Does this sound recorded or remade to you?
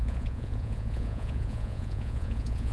remade